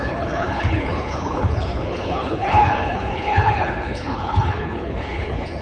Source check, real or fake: fake